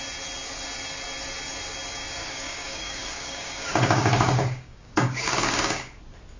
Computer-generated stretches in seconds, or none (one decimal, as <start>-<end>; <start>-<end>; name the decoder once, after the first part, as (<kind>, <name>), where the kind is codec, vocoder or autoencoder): 2.2-6.0 (codec, DAC)